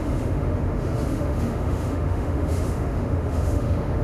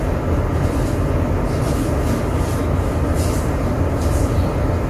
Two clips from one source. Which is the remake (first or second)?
first